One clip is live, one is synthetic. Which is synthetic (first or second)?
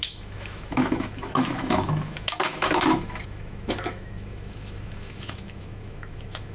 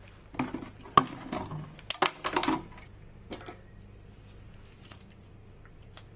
first